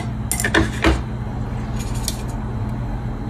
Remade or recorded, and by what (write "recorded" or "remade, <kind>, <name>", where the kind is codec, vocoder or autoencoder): recorded